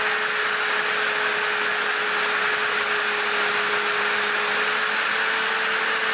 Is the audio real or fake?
real